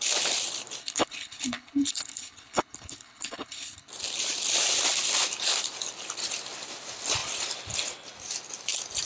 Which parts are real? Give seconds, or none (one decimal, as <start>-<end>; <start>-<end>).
0.0-0.8; 3.9-9.1